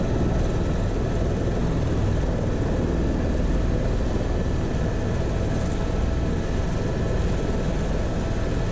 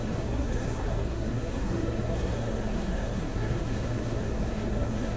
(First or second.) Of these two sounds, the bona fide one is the first